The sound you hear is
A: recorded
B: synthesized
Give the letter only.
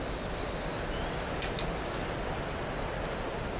A